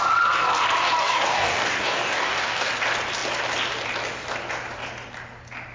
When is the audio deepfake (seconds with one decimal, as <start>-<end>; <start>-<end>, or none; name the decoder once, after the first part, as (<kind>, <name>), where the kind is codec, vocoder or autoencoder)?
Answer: 1.0-2.7 (codec, DAC)